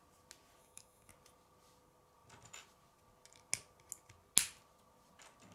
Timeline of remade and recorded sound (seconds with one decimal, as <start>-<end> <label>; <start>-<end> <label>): 0.0-0.6 recorded; 0.6-1.1 remade; 1.1-5.5 recorded